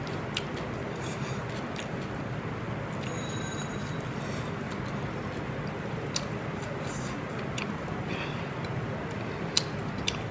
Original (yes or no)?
yes